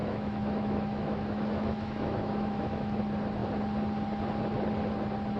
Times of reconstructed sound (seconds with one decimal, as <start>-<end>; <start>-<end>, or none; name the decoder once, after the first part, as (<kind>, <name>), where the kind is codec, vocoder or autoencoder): 0.0-3.0 (autoencoder, DAC-VAE)